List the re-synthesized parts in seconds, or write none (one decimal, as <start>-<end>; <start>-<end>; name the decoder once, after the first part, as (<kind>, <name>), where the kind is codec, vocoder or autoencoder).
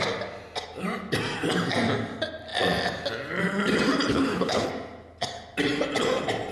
4.1-4.7 (codec, HILCodec)